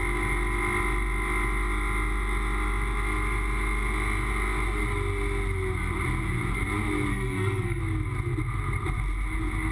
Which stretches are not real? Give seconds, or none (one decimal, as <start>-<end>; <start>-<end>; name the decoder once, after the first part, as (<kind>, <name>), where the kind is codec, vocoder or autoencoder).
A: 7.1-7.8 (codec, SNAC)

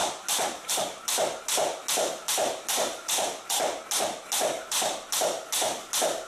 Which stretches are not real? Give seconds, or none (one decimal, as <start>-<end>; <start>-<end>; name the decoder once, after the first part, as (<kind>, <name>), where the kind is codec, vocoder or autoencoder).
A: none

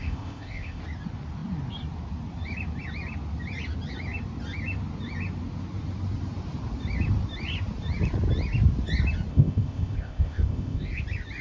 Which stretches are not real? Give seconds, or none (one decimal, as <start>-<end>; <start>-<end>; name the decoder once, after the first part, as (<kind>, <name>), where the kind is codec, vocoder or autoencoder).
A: 0.0-0.8 (codec, ZipCodec); 9.3-11.0

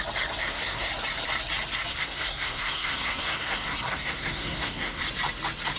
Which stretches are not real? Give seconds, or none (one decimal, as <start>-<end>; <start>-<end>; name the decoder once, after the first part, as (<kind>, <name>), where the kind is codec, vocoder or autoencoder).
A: 0.4-0.9 (codec, SNAC); 1.9-5.0

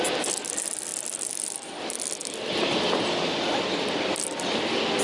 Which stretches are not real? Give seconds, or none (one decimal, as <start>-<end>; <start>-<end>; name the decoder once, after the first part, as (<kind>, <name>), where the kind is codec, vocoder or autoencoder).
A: none

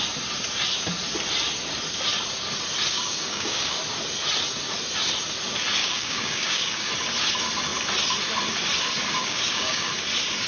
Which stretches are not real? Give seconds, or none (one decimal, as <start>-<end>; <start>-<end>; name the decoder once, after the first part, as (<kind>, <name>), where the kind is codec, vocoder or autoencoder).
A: 2.9-3.8 (codec, DAC); 5.8-6.9; 9.2-9.9